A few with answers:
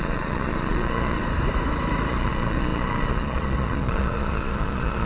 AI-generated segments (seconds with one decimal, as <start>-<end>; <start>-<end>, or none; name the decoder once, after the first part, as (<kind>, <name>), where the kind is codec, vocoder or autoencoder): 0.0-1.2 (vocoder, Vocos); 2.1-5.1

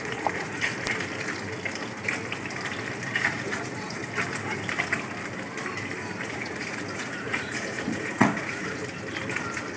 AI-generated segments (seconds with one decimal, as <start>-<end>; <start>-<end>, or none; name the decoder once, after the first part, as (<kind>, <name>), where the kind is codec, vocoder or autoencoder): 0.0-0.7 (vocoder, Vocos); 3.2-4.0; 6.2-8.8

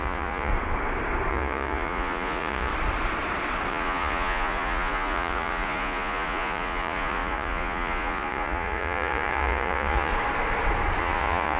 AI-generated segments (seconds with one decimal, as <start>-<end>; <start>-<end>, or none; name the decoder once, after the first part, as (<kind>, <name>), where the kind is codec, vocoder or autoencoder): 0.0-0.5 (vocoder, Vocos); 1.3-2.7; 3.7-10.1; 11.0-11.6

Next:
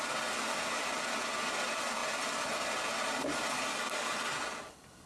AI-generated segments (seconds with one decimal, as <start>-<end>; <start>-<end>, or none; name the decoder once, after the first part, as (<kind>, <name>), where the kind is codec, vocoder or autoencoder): none

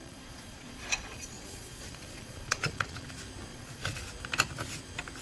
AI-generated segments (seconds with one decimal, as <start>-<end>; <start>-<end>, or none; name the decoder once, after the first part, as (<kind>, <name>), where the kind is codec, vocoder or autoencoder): 0.0-3.1 (vocoder, Vocos); 3.5-4.1